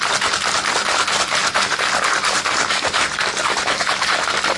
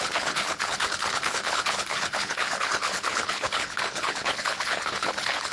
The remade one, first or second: second